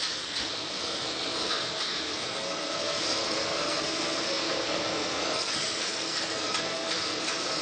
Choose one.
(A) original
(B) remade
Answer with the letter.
B